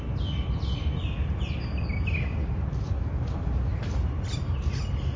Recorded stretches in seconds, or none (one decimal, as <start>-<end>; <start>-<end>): 0.0-5.2

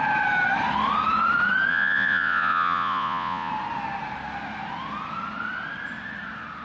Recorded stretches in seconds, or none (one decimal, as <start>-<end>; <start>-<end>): 0.0-1.7; 3.5-6.6

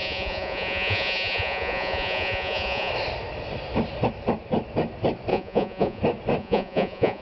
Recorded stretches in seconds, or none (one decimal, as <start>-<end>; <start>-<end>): 2.9-5.3; 6.0-6.4

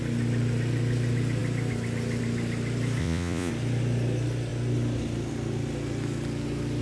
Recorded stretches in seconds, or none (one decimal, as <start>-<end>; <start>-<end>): 0.0-3.0; 3.5-6.8

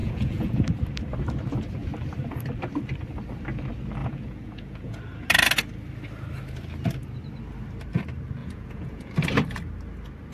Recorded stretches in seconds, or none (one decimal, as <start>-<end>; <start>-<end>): 0.6-4.0; 5.0-8.4; 9.1-10.3